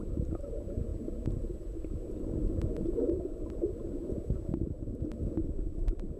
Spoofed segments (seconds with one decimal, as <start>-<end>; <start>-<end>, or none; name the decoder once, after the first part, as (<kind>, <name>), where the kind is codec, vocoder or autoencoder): none